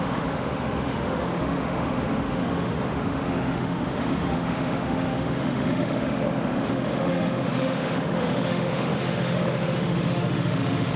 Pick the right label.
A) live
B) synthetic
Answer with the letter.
B